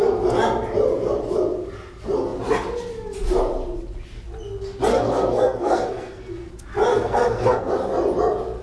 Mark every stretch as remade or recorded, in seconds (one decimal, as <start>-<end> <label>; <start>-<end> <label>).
0.0-4.9 recorded; 4.9-6.5 remade; 6.5-6.9 recorded; 6.9-7.7 remade; 7.7-8.6 recorded